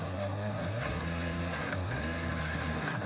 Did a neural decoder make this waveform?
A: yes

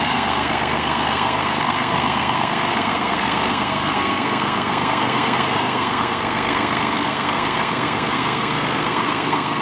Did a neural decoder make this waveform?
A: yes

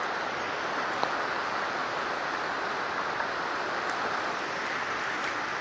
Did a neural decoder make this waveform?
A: no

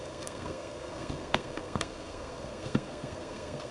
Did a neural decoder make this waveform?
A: yes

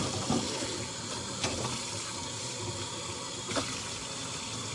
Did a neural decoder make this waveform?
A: no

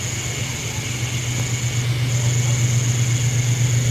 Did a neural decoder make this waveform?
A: no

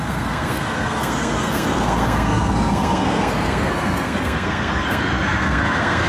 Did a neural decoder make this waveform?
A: yes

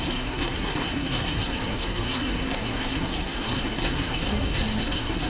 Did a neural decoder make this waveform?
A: yes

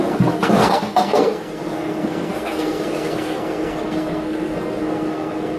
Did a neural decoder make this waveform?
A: yes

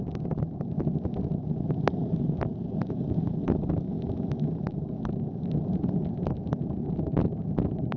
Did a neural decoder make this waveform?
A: no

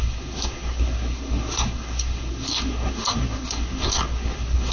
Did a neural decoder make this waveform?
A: yes